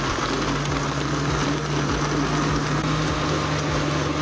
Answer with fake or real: real